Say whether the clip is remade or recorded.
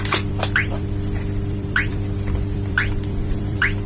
remade